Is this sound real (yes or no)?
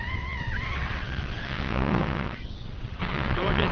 no